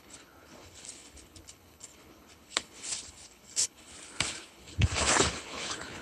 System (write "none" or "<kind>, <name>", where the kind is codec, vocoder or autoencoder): codec, HILCodec